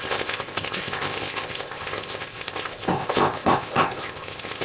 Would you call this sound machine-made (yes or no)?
yes